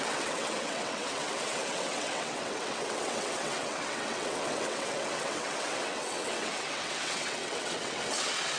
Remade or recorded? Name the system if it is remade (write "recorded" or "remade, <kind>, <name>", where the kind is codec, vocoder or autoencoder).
remade, vocoder, WaveNeXt